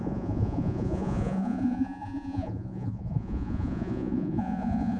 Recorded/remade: remade